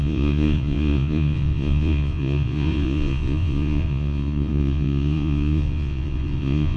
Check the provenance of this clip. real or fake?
fake